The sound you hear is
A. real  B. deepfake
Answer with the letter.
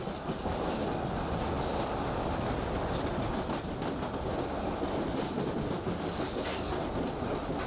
A